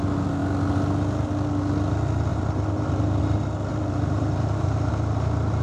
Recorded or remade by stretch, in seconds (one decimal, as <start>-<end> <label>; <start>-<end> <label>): 0.0-2.3 recorded; 2.3-3.2 remade; 3.2-3.7 recorded; 3.7-4.9 remade; 4.9-5.6 recorded